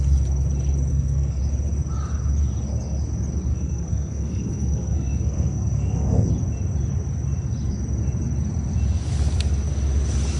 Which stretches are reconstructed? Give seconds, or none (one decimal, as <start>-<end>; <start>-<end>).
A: 0.9-1.4; 3.5-6.3